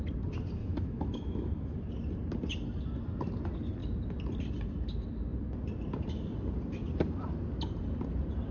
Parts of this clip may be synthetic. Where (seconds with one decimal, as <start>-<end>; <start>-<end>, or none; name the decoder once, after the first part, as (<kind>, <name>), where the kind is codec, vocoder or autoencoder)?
0.6-1.9 (autoencoder, DAC-VAE)